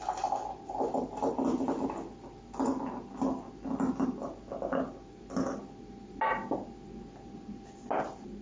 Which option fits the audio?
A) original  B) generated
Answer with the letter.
A